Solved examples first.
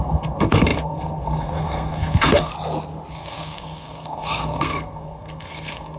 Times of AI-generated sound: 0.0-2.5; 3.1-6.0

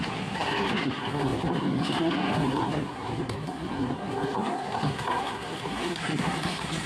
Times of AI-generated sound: 0.0-6.9

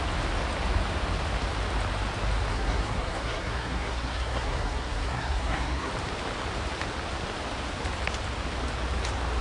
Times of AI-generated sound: 2.5-5.9